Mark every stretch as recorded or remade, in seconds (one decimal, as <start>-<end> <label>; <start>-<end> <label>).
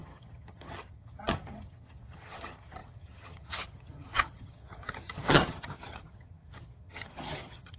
0.0-7.8 remade